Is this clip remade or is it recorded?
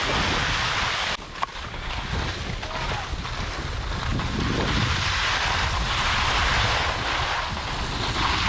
recorded